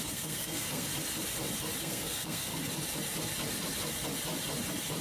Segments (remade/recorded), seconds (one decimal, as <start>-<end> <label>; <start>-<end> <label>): 0.0-0.9 remade; 0.9-1.8 recorded; 1.8-2.5 remade; 2.5-5.0 recorded